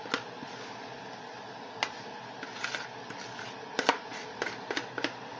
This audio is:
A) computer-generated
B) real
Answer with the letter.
B